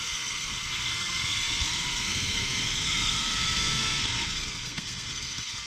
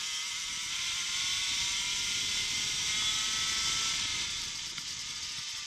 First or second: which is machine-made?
first